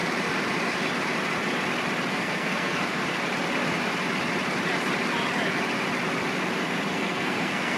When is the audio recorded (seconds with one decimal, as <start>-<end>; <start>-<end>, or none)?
0.0-2.1; 3.0-6.9